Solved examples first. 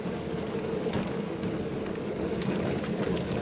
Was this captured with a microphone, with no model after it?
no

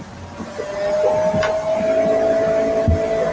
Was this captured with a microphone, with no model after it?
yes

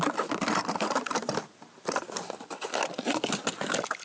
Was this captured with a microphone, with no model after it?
yes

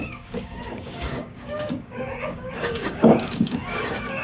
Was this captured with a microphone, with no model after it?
no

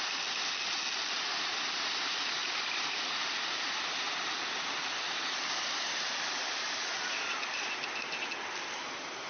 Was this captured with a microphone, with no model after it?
yes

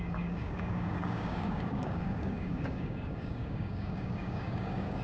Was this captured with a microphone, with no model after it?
no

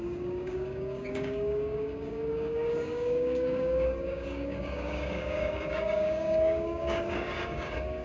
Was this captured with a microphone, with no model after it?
no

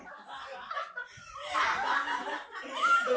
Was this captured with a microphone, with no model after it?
yes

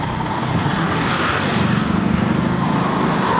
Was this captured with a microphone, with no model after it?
no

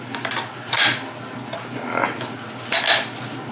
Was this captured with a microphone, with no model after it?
yes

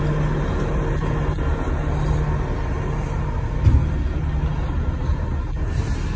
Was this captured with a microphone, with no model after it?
yes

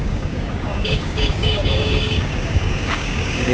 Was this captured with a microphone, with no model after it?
no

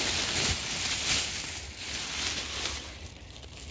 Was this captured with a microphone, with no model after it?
yes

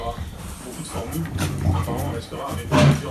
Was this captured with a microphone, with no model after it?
yes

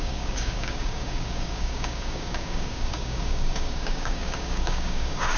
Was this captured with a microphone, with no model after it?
no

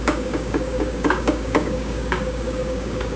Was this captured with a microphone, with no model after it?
no